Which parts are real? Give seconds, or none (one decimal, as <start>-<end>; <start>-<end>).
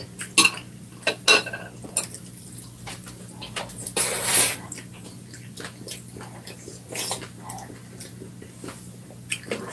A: 0.0-9.7